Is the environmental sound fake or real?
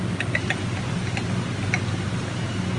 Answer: real